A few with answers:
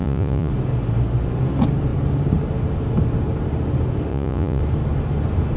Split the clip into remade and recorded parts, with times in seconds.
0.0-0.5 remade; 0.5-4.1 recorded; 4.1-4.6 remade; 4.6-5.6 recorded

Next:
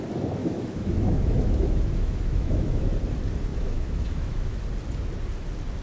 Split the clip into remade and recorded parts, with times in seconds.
0.0-0.4 recorded; 0.4-2.9 remade; 2.9-3.5 recorded; 3.5-4.6 remade; 4.6-5.8 recorded

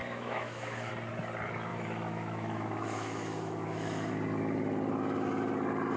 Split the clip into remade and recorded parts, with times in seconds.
0.0-0.9 remade; 0.9-1.7 recorded; 1.7-4.1 remade; 4.1-6.0 recorded

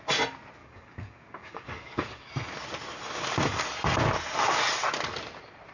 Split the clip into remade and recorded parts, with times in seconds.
0.0-0.6 recorded; 0.6-2.3 remade; 2.3-5.7 recorded

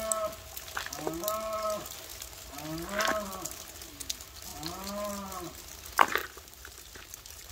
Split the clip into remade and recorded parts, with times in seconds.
0.0-6.2 recorded; 6.2-7.5 remade

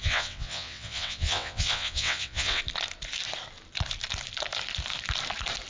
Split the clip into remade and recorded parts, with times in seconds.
0.0-2.6 remade; 2.6-5.7 recorded